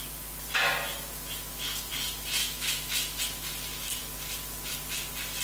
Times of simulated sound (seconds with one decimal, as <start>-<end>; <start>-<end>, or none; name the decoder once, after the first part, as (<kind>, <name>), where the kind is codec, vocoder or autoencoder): 2.4-3.2 (autoencoder, DAC-VAE)